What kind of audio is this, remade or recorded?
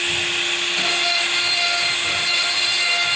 recorded